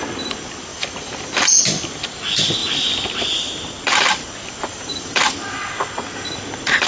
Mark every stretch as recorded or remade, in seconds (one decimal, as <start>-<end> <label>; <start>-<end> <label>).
0.0-0.7 recorded; 0.7-1.6 remade; 1.6-4.7 recorded; 4.7-5.2 remade; 5.2-6.9 recorded